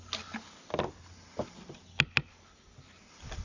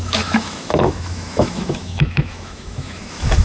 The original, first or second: first